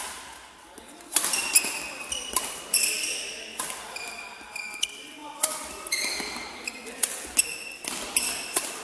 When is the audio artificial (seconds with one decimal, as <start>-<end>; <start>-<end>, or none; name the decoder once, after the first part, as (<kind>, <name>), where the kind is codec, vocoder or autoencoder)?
none

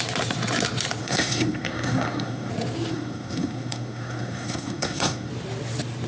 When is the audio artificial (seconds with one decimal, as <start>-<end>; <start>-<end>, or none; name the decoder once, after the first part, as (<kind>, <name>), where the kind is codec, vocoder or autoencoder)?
1.0-2.5 (codec, SNAC); 2.9-5.3

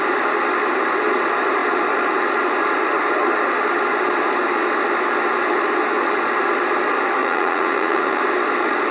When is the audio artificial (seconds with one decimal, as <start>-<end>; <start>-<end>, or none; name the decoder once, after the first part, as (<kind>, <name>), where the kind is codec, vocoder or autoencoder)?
7.2-8.2 (vocoder, Vocos)